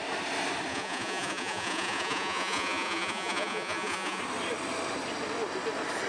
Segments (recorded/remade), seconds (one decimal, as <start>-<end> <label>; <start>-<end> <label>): 0.0-0.7 recorded; 0.7-4.2 remade; 4.2-6.1 recorded